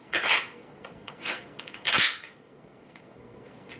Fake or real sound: fake